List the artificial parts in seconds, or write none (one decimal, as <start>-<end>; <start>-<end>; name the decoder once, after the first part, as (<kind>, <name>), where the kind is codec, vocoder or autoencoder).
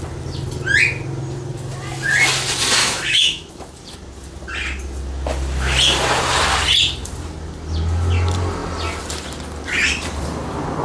2.8-3.5 (autoencoder, DAC-VAE)